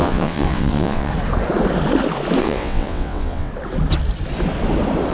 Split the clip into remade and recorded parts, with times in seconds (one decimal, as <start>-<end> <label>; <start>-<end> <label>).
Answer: 0.0-1.1 remade; 1.1-2.4 recorded; 2.4-3.5 remade; 3.5-5.1 recorded